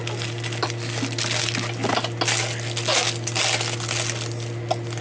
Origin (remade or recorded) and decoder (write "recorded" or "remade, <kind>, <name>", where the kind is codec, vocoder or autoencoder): recorded